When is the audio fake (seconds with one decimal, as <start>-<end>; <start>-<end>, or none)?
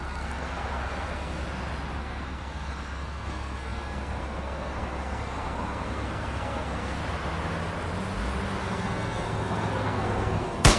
0.0-1.4; 2.0-7.0; 8.6-10.8